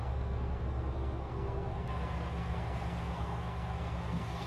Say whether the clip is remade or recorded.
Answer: remade